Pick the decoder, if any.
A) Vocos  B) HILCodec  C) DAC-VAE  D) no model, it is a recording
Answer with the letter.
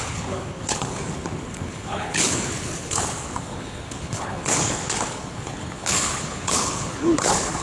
B